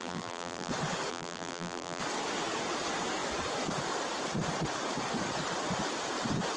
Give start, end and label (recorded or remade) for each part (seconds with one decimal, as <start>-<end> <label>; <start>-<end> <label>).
0.0-0.7 remade; 0.7-1.1 recorded; 1.1-2.0 remade; 2.0-6.6 recorded